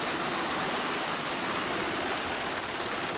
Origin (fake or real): real